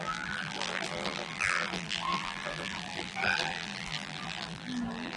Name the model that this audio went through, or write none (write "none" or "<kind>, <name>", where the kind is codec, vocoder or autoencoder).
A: vocoder, BigVGAN v2